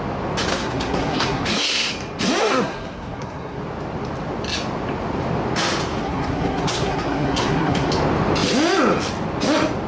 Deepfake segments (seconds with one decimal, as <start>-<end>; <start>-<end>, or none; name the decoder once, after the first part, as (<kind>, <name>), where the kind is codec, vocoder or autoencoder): 0.5-1.9 (codec, SNAC); 2.4-3.6; 6.0-7.9